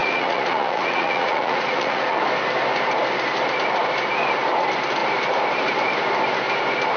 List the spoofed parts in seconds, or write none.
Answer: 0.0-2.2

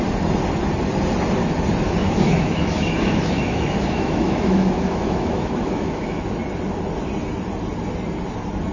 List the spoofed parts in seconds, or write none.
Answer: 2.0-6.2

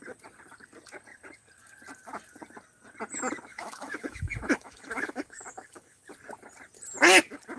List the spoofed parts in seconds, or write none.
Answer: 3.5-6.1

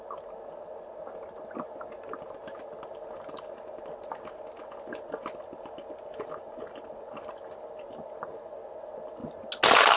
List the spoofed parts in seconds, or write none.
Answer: none